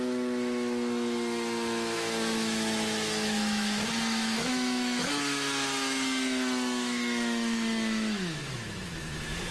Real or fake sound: fake